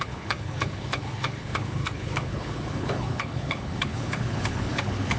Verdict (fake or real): fake